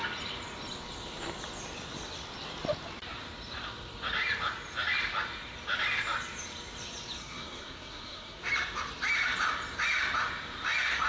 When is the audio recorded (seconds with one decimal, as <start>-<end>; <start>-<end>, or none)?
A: 0.0-7.2; 8.4-11.1